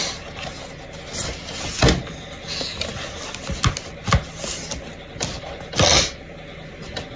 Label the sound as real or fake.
real